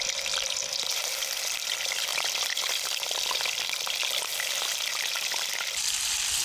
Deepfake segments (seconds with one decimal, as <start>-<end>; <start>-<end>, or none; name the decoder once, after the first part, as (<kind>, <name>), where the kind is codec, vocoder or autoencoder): none